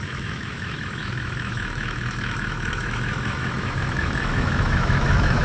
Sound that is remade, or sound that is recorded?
remade